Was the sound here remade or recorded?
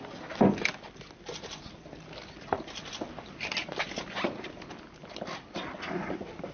recorded